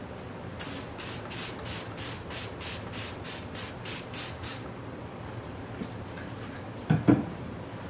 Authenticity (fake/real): fake